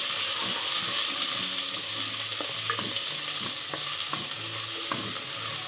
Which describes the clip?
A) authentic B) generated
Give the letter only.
A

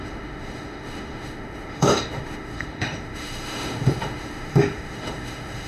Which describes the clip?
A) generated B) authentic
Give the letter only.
A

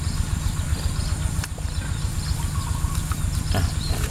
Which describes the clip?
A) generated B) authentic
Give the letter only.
B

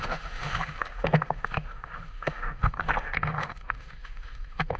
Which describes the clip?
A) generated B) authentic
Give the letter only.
A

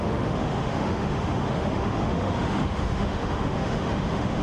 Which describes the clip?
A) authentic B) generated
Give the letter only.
B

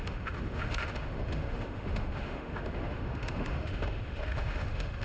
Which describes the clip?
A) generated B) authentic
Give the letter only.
A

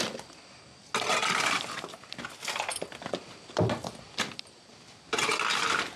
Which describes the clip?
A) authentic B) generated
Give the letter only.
A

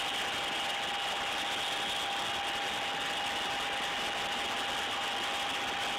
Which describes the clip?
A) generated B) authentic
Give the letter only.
B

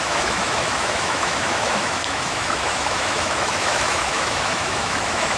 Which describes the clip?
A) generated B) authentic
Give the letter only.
A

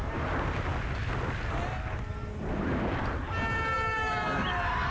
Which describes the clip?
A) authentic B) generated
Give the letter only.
A